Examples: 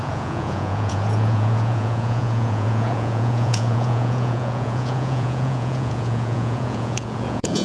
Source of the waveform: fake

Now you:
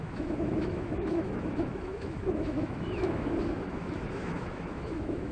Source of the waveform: fake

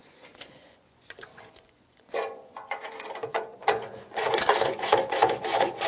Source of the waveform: fake